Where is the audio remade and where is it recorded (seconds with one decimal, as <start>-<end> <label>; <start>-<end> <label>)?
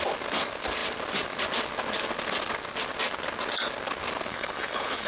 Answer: 0.0-4.3 recorded; 4.3-5.1 remade